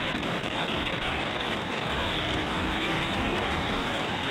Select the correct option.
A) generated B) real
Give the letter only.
A